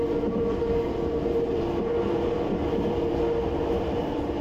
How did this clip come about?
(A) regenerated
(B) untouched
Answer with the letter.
B